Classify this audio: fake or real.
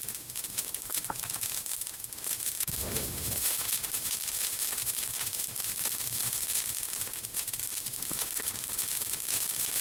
fake